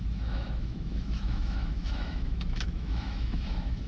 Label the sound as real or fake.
fake